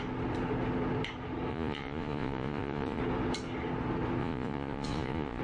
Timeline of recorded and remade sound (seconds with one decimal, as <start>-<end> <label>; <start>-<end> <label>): 0.0-1.5 recorded; 1.5-3.0 remade; 3.0-4.2 recorded; 4.2-5.4 remade